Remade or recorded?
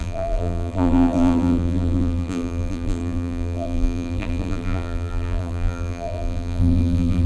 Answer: remade